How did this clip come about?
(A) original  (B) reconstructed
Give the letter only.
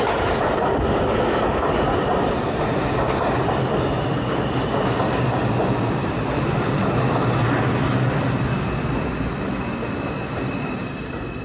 A